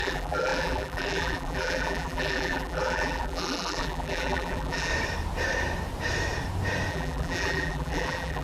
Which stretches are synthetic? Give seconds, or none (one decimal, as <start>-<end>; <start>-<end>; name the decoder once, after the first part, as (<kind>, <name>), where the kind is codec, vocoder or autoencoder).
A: 0.0-4.9 (vocoder, BigVGAN v2); 6.9-8.4